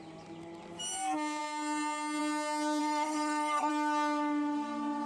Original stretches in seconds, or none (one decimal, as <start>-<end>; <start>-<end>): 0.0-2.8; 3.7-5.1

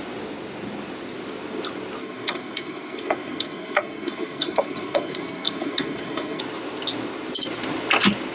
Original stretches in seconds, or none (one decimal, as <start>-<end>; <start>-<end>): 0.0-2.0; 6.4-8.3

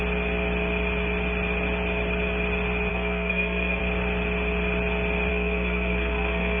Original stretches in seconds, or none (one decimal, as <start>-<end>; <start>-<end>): 0.0-2.9; 3.8-5.3

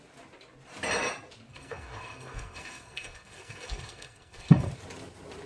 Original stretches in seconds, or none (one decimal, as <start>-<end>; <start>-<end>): 0.0-1.5; 4.7-5.5

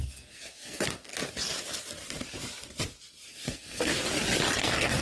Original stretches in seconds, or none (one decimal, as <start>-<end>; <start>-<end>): 1.1-3.3; 3.9-4.6

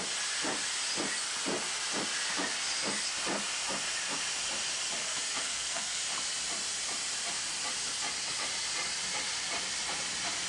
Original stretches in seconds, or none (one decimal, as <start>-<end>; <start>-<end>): 0.0-5.0; 6.0-10.5

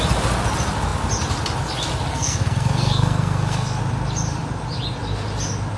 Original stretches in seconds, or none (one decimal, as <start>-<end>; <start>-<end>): 0.0-2.1; 3.8-5.8